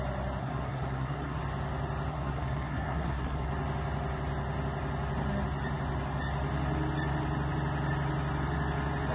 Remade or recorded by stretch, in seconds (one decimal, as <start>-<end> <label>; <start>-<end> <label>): 0.0-0.4 recorded; 0.4-1.4 remade; 1.4-2.1 recorded; 2.1-3.5 remade; 3.5-9.1 recorded